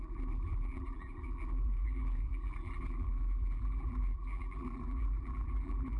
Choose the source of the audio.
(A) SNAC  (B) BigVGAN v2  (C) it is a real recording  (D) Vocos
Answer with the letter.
B